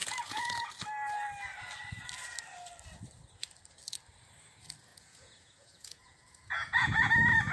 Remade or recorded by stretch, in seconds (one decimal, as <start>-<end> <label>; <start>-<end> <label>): 0.0-0.7 remade; 0.7-4.9 recorded; 4.9-7.1 remade; 7.1-7.5 recorded

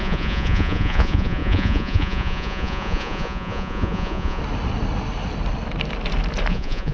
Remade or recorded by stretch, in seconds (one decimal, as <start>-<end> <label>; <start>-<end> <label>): 0.0-4.4 remade; 4.4-6.5 recorded; 6.5-6.9 remade

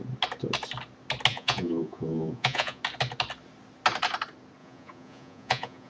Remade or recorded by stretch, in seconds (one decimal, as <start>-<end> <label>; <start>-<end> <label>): 0.0-1.3 recorded; 1.3-2.8 remade; 2.8-4.6 recorded; 4.6-5.9 remade

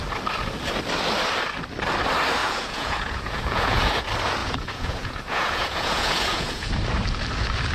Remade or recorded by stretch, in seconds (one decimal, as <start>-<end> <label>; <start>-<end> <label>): 0.0-2.4 recorded; 2.4-4.0 remade; 4.0-4.4 recorded; 4.4-6.7 remade; 6.7-7.7 recorded

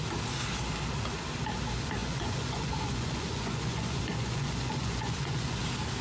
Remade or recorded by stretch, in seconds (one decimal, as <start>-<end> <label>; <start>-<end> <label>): 0.0-2.0 recorded; 2.0-5.6 remade; 5.6-6.0 recorded

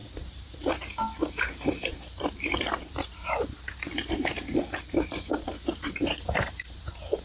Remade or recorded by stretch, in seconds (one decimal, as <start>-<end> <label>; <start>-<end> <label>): 0.0-7.2 recorded

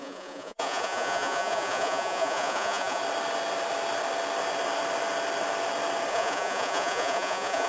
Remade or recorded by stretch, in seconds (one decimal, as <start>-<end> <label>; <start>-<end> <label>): 0.0-3.0 remade; 3.0-6.1 recorded; 6.1-7.7 remade